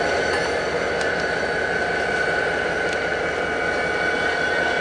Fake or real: real